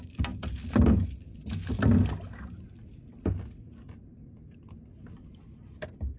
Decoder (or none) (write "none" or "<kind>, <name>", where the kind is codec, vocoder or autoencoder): none